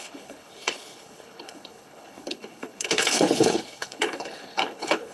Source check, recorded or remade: remade